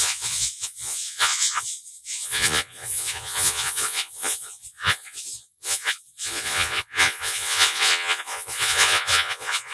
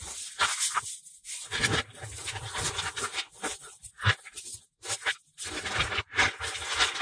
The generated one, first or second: first